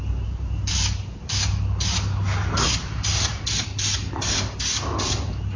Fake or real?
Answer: real